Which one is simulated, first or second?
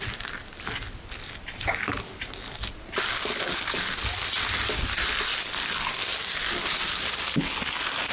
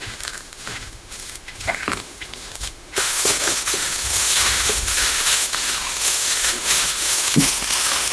second